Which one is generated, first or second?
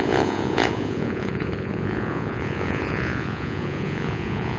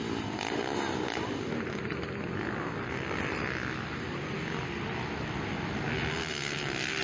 first